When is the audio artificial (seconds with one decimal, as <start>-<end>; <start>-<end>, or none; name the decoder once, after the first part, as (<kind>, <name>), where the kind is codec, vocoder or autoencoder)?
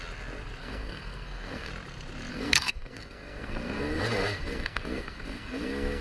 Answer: 0.6-1.7 (codec, SNAC); 2.3-6.0